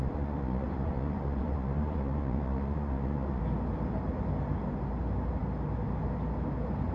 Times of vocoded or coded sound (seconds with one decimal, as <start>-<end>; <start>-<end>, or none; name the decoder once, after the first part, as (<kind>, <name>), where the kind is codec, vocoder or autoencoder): 0.0-3.4 (vocoder, Vocos)